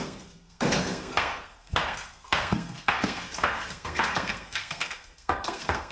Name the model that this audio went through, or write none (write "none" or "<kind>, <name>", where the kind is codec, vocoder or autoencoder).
codec, SNAC